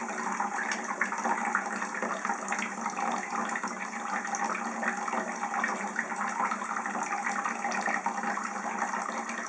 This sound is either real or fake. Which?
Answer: real